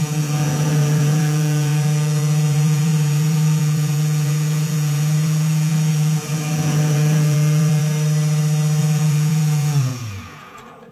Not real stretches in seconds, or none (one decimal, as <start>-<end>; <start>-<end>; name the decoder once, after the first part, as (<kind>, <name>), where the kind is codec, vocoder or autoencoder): 0.0-7.8 (vocoder, Vocos); 8.8-10.9